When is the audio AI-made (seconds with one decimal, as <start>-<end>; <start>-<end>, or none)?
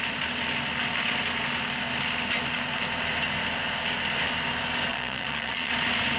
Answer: 4.9-5.7